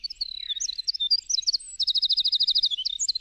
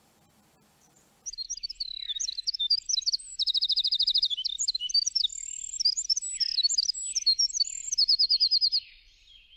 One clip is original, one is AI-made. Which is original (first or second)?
first